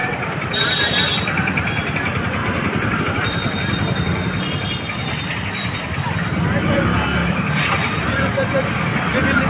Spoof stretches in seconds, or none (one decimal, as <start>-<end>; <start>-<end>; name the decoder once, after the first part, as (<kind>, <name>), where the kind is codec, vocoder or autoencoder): 0.0-0.9 (vocoder, BigVGAN v2); 2.4-3.0; 7.2-8.8